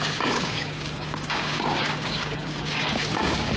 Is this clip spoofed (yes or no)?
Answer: yes